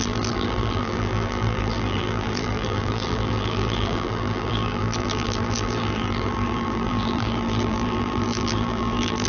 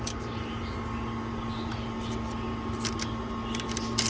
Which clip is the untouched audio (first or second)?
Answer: second